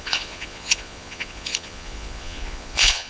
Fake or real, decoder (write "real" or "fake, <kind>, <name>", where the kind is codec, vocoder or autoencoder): fake, vocoder, Vocos